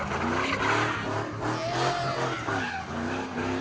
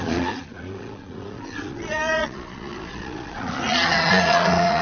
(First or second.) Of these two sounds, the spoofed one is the second